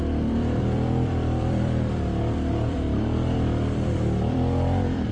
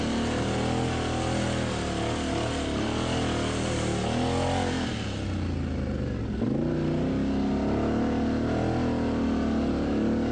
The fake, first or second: first